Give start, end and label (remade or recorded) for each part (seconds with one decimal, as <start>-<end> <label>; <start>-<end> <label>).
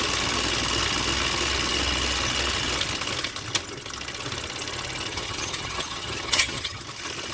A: 0.0-5.1 recorded; 5.1-6.8 remade; 6.8-7.3 recorded